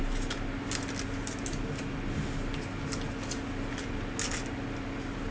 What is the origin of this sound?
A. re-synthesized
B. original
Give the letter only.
B